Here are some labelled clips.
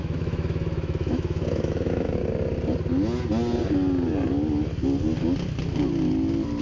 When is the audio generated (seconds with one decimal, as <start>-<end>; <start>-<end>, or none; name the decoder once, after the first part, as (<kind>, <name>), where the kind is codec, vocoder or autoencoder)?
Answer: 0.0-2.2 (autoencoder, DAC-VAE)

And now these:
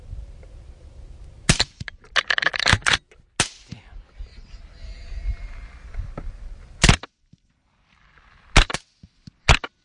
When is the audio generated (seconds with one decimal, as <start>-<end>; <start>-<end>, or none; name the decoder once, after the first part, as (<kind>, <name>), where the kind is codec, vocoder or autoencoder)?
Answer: none

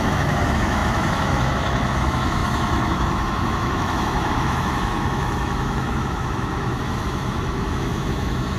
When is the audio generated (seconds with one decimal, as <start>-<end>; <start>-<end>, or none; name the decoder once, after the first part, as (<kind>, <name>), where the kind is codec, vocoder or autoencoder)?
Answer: 0.0-8.6 (autoencoder, DAC-VAE)

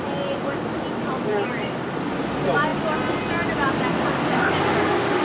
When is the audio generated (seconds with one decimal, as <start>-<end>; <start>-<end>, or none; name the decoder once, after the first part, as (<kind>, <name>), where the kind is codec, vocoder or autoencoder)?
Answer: none

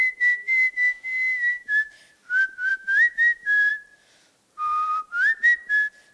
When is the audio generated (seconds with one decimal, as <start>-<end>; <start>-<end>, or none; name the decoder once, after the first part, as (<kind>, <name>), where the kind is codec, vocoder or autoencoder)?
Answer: 0.5-2.0 (autoencoder, DAC-VAE); 2.7-3.7